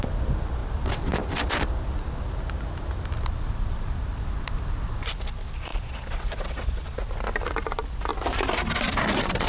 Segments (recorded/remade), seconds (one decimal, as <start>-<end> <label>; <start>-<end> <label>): 0.0-5.7 recorded; 5.7-7.0 remade; 7.0-9.5 recorded